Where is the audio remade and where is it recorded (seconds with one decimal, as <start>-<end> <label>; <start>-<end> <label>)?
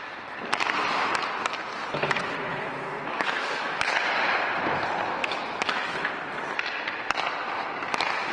0.0-2.5 recorded; 2.5-3.9 remade; 3.9-5.2 recorded; 5.2-6.1 remade; 6.1-8.3 recorded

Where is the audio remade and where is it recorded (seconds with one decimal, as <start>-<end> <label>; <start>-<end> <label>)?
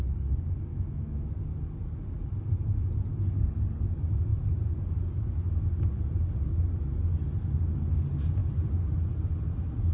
0.0-0.7 recorded; 0.7-1.3 remade; 1.3-9.9 recorded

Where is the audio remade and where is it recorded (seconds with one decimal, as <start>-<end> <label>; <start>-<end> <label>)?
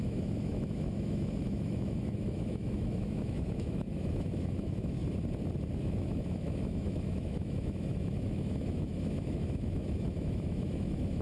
0.0-5.0 remade; 5.0-5.8 recorded; 5.8-11.2 remade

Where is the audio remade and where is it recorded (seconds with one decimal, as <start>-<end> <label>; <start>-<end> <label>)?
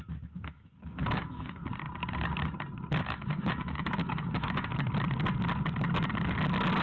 0.0-1.6 remade; 1.6-3.0 recorded; 3.0-4.7 remade; 4.7-6.8 recorded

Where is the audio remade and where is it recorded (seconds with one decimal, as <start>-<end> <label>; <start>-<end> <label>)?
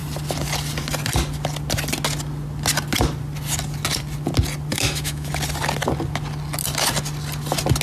0.0-4.7 recorded; 4.7-5.3 remade; 5.3-7.8 recorded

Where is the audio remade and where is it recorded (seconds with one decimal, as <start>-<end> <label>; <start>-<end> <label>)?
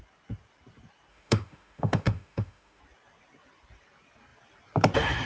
0.0-1.1 recorded; 1.1-2.8 remade; 2.8-5.3 recorded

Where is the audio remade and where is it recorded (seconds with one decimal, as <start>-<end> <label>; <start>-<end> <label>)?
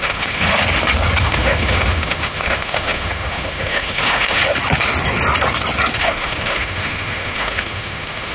0.0-0.5 remade; 0.5-1.2 recorded; 1.2-4.4 remade; 4.4-6.0 recorded; 6.0-8.3 remade